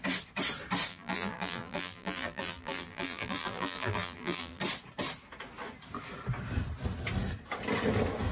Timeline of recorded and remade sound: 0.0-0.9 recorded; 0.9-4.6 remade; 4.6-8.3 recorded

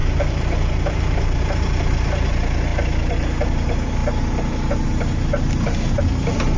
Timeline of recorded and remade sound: 0.0-2.3 remade; 2.3-6.6 recorded

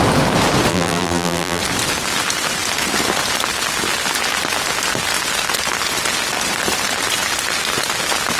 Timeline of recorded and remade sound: 0.0-0.7 recorded; 0.7-1.6 remade; 1.6-8.4 recorded

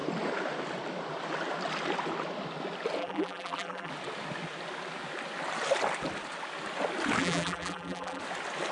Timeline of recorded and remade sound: 0.0-3.0 recorded; 3.0-3.9 remade; 3.9-7.2 recorded; 7.2-8.2 remade; 8.2-8.7 recorded

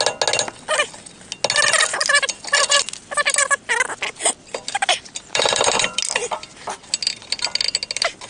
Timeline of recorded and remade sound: 0.0-4.8 recorded; 4.8-6.0 remade; 6.0-8.3 recorded

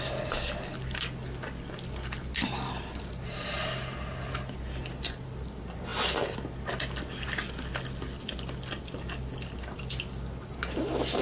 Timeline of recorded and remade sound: 0.0-11.2 recorded

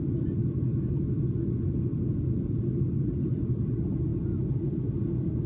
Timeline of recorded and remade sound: 0.0-1.9 recorded; 1.9-3.6 remade; 3.6-5.5 recorded

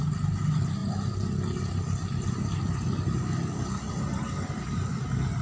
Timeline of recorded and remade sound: 0.0-5.4 recorded